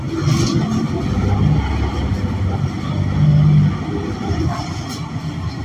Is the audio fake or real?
real